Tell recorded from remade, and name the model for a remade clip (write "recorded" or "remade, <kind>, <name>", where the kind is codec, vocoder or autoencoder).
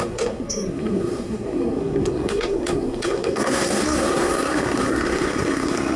remade, codec, SNAC